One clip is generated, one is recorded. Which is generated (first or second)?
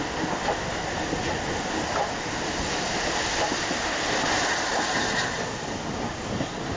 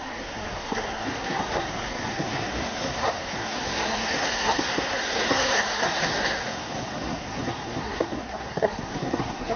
second